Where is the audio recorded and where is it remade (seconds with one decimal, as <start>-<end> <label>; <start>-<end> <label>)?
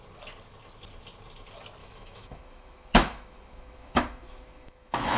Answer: 0.0-1.8 recorded; 1.8-5.2 remade